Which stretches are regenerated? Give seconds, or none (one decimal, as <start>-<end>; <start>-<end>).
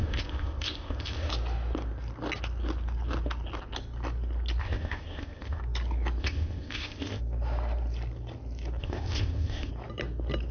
0.0-1.3; 4.6-5.6; 6.2-7.2; 8.8-9.7